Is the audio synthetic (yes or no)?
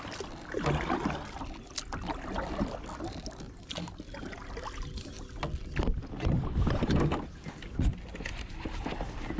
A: no